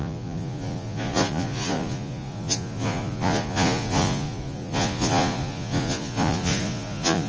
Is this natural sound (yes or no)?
no